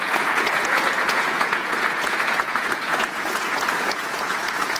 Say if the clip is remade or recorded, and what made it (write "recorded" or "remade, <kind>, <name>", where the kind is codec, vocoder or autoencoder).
remade, vocoder, Vocos